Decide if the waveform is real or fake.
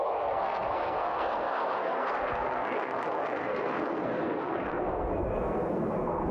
fake